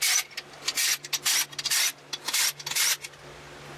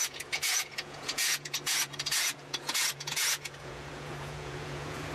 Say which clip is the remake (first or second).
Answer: second